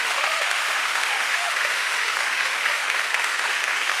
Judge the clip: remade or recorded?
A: remade